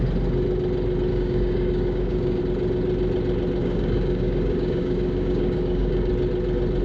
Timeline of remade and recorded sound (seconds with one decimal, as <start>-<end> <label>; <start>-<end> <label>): 0.0-1.1 recorded; 1.1-2.4 remade; 2.4-3.6 recorded; 3.6-6.1 remade; 6.1-6.8 recorded